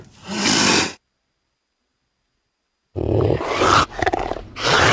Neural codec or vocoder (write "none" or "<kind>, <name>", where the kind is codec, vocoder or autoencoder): none